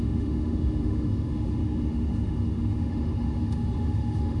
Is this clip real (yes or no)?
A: no